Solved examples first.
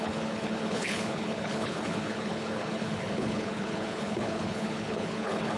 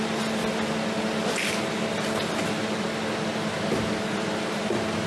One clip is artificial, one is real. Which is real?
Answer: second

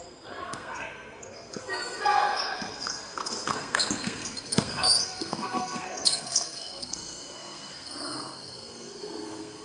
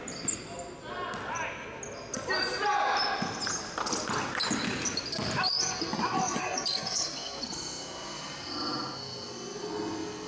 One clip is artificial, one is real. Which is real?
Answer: second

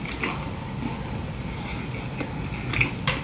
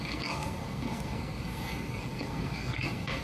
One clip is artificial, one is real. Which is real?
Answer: first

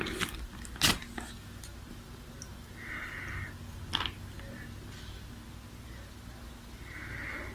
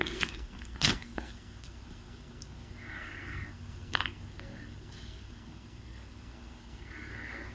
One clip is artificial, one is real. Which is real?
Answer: first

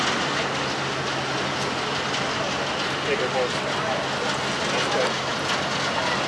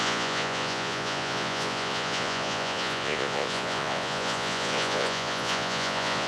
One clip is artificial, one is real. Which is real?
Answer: first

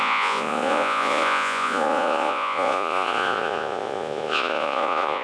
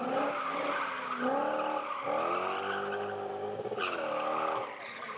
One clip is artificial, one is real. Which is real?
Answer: second